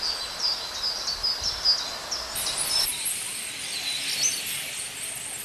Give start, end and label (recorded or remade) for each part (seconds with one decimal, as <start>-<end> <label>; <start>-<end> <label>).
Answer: 0.0-5.4 recorded

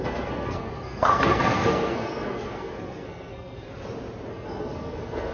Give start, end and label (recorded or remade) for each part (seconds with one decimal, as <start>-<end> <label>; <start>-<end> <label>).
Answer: 0.0-3.7 remade; 3.7-4.3 recorded; 4.3-5.3 remade

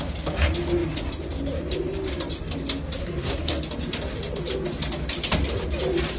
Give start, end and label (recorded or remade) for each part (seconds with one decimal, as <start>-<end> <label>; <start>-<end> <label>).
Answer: 0.0-3.0 recorded; 3.0-3.6 remade; 3.6-6.2 recorded

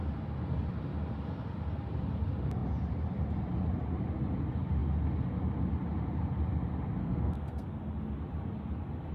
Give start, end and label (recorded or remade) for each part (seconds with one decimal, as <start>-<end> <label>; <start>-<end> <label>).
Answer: 0.0-7.0 recorded; 7.0-7.8 remade; 7.8-9.1 recorded

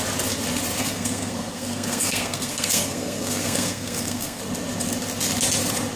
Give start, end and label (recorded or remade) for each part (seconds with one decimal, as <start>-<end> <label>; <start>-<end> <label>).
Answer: 0.0-0.8 recorded; 0.8-4.4 remade; 4.4-6.0 recorded

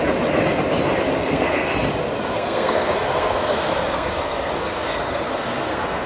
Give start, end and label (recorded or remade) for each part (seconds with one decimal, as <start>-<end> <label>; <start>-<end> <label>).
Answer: 0.0-1.2 recorded; 1.2-1.7 remade; 1.7-2.3 recorded; 2.3-6.1 remade

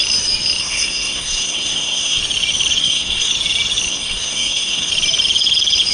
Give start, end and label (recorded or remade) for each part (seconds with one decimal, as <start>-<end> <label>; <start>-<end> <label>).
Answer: 0.0-0.6 recorded; 0.6-2.2 remade; 2.2-2.8 recorded; 2.8-3.3 remade; 3.3-3.9 recorded; 3.9-4.9 remade; 4.9-5.9 recorded

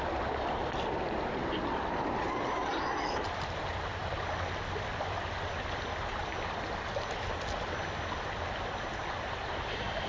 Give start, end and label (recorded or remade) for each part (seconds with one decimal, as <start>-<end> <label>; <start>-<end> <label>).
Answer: 0.0-10.1 recorded